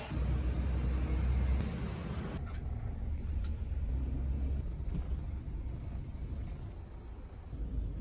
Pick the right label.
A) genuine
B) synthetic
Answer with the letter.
A